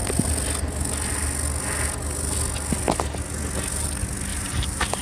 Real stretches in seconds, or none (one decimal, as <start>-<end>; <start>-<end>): 0.0-4.3